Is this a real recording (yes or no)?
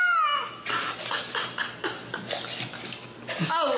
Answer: yes